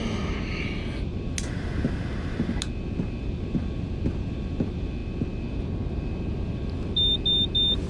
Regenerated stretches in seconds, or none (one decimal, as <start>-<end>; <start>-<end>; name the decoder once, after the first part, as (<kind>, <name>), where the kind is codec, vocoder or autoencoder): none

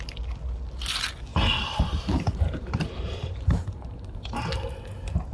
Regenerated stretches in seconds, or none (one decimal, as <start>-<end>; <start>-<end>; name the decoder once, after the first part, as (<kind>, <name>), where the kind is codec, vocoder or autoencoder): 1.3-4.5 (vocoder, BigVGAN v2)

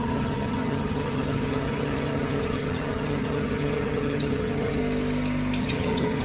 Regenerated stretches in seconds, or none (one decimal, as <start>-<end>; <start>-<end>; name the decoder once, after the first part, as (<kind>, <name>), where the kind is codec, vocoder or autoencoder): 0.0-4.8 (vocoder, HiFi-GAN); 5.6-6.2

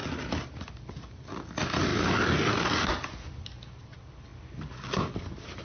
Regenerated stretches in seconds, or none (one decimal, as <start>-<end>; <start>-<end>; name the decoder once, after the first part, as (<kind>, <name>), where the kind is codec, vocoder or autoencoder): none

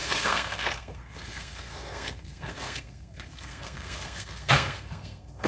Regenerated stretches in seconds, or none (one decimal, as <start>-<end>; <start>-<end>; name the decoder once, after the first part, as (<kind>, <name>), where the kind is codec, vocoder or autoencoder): 0.0-5.5 (codec, SNAC)

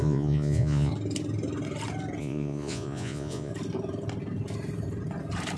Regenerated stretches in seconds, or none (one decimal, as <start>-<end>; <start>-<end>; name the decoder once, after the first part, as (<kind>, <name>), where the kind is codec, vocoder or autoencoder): 0.0-0.9 (vocoder, Vocos); 2.2-3.5